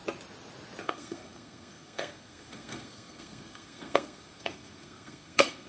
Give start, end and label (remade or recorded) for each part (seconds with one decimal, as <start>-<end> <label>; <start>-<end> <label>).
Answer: 0.0-0.8 recorded; 0.8-5.7 remade